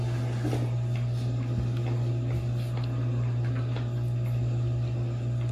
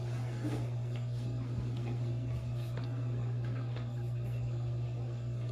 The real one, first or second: first